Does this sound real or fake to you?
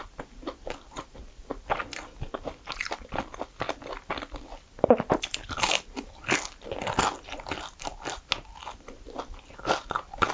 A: real